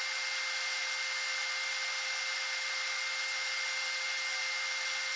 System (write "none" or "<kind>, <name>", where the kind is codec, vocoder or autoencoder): none